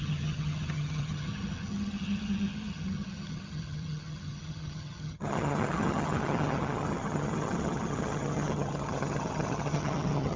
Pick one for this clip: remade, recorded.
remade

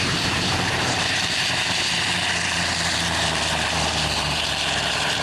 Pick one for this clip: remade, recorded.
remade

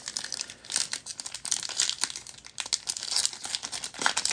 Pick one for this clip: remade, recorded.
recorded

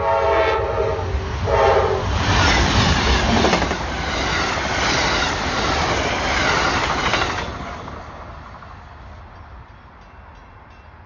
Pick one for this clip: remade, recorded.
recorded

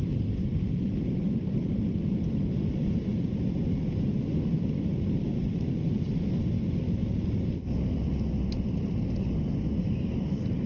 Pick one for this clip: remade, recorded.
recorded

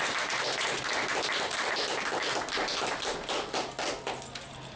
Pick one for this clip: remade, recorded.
recorded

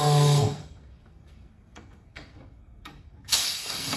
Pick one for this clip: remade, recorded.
remade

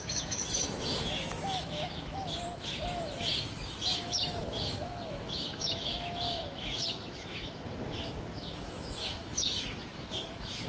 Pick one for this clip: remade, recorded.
remade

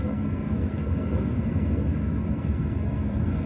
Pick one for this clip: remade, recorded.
remade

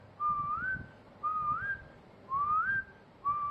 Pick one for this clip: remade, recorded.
recorded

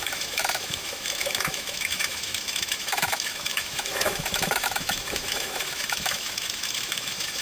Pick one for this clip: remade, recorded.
remade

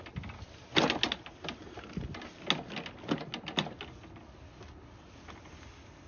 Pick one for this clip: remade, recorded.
recorded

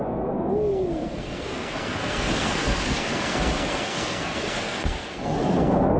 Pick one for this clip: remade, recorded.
remade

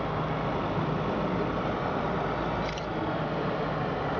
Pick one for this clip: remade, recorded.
recorded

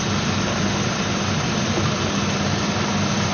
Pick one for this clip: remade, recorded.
recorded